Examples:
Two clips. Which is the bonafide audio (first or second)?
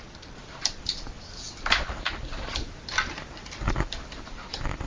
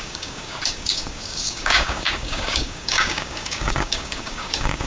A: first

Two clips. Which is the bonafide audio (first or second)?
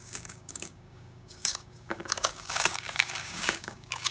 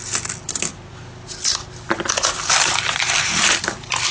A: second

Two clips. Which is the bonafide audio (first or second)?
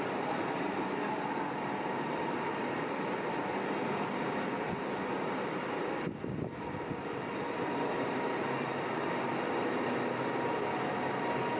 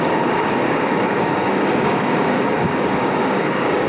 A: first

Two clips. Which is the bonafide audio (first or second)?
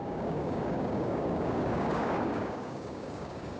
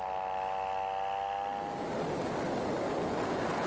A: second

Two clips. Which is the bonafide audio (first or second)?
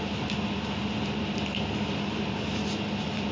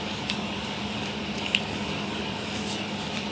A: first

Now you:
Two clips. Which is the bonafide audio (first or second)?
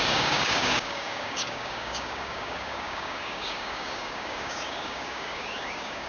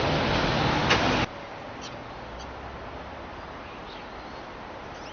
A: second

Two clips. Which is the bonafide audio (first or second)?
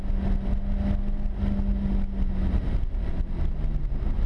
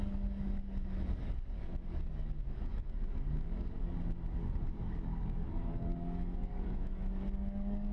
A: first